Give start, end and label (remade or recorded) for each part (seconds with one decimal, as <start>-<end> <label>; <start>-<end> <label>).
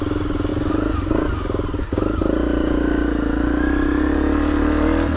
0.0-5.2 recorded